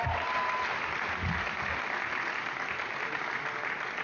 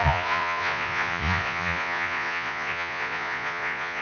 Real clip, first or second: first